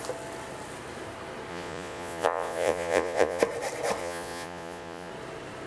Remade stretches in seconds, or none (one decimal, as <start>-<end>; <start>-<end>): 1.5-3.4; 4.0-5.1